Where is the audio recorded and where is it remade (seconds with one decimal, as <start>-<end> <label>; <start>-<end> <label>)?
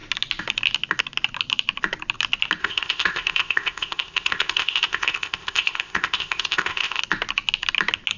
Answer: 0.0-2.6 recorded; 2.6-7.0 remade; 7.0-8.2 recorded